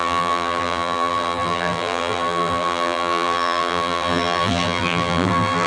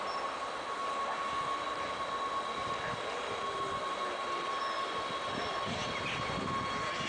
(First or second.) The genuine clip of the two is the second